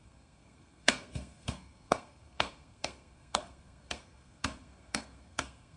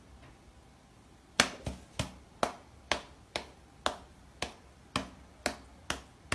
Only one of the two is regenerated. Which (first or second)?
first